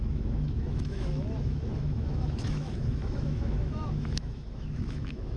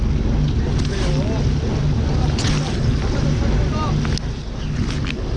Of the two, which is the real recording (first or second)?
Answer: second